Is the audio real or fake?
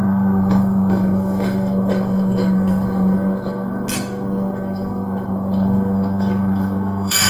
fake